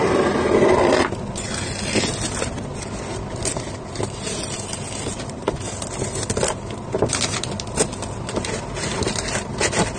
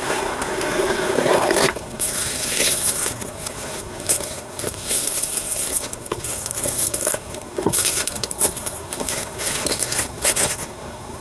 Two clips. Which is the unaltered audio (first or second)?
first